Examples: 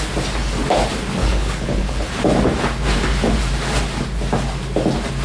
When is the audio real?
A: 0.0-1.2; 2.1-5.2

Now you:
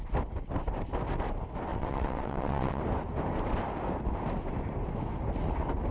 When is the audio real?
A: 0.0-1.7; 2.8-5.9

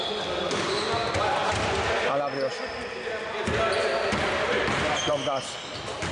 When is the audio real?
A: 0.0-6.1

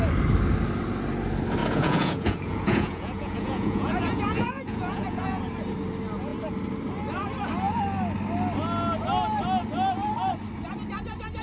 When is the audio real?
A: 0.0-1.6; 5.4-11.4

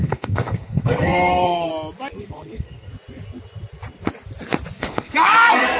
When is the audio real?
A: 1.7-2.2; 2.9-4.8